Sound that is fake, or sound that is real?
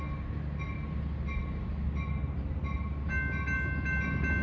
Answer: real